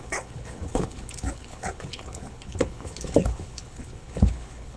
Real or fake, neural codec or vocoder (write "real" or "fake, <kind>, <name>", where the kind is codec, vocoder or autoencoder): fake, codec, HILCodec